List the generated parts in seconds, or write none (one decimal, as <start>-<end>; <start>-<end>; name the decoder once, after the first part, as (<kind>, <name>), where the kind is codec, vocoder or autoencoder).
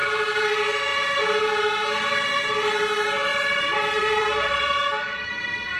0.0-0.5 (vocoder, BigVGAN v2); 3.3-5.0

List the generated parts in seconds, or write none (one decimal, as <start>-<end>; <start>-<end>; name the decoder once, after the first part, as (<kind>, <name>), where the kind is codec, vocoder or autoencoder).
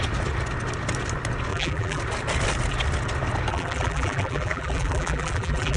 1.5-2.0 (vocoder, BigVGAN v2); 3.5-5.8